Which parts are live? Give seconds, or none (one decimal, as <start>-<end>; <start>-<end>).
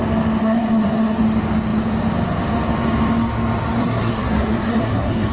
0.0-0.4; 1.2-3.8